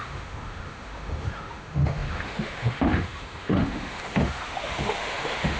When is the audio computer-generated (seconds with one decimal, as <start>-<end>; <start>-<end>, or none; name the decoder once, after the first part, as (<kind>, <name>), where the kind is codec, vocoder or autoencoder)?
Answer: 0.0-5.6 (autoencoder, DAC-VAE)